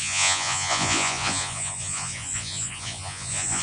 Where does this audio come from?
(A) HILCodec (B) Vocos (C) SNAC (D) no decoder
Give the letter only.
B